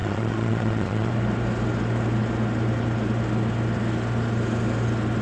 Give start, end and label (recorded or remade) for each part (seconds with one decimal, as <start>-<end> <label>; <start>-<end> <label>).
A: 0.0-1.1 remade; 1.1-5.2 recorded